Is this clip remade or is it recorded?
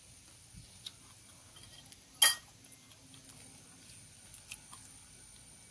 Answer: recorded